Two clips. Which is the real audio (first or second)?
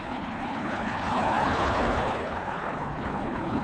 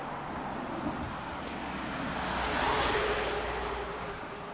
second